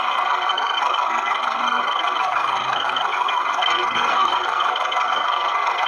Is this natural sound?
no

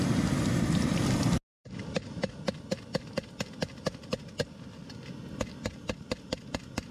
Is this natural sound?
yes